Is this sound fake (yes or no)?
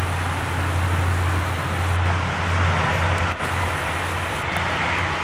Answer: no